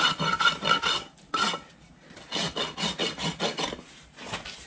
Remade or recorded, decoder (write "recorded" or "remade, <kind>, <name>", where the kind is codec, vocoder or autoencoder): recorded